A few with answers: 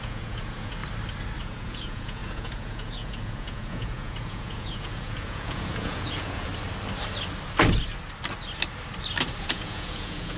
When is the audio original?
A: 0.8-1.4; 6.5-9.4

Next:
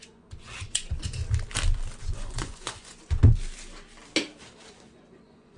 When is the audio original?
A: 1.2-2.0; 3.2-4.7